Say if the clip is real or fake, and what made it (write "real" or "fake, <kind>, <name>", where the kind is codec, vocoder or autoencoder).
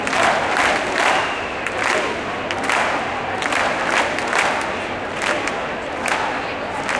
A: real